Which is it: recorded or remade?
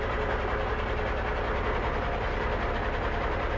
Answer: recorded